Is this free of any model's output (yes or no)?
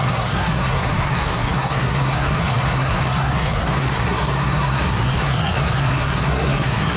no